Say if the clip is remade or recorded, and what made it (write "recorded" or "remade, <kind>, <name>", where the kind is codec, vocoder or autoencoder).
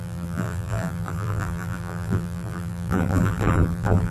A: remade, vocoder, BigVGAN v2